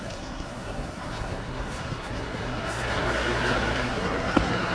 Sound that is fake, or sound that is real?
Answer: fake